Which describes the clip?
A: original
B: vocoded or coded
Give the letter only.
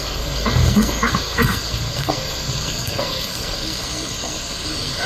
B